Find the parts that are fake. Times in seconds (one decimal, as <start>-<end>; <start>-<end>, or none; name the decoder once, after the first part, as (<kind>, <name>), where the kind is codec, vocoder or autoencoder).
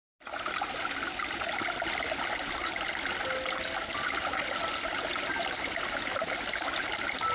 none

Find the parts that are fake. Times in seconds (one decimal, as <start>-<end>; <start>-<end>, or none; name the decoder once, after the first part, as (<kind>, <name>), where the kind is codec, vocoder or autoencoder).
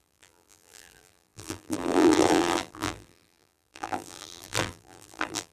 0.0-5.5 (vocoder, BigVGAN v2)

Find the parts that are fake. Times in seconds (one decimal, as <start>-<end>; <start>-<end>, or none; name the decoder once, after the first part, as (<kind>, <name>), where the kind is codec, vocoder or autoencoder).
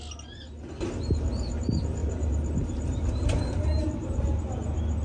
2.0-4.4 (vocoder, BigVGAN v2)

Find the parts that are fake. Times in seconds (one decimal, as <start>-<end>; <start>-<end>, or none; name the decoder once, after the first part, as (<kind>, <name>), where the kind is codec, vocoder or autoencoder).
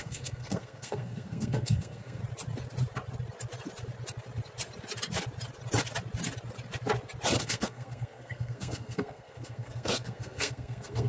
0.0-2.2 (codec, SNAC); 7.4-11.1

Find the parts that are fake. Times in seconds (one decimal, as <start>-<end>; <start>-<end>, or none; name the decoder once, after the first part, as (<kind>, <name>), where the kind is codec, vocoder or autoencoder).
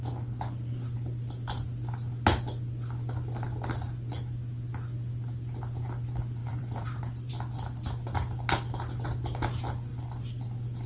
6.4-7.3 (vocoder, BigVGAN v2)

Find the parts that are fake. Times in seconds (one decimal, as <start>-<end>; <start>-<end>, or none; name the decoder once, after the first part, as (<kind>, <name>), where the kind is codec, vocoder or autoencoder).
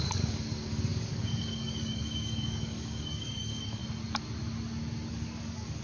0.0-3.8 (codec, DAC); 5.1-5.8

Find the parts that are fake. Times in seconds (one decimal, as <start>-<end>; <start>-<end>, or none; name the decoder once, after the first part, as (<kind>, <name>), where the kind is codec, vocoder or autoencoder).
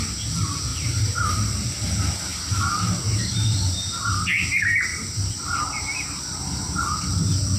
0.7-1.3 (vocoder, BigVGAN v2); 4.9-6.2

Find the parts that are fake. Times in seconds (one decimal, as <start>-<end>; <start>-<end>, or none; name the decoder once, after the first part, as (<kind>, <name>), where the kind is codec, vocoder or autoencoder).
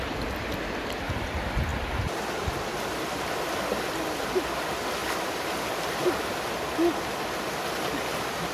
none